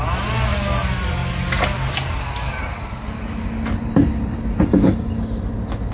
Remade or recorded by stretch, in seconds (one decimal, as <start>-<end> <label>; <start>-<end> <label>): 0.0-5.9 recorded